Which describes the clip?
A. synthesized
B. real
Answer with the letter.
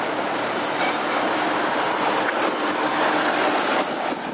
A